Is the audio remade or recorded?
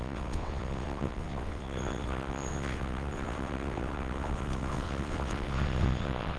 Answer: remade